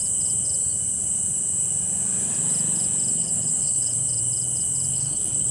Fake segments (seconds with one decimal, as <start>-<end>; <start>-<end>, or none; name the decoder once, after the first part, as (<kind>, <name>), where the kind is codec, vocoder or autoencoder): 3.1-4.0 (codec, HILCodec); 4.9-5.5